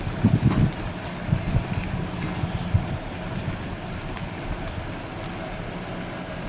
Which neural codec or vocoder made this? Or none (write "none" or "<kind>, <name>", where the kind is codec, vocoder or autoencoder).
none